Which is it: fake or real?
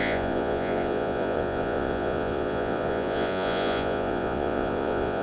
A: fake